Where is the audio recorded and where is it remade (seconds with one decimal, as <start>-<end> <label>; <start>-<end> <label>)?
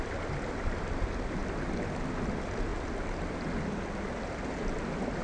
0.0-5.2 recorded